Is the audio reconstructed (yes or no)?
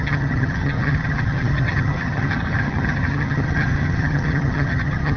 yes